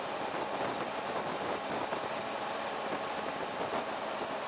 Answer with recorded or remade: remade